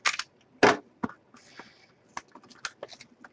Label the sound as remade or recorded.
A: recorded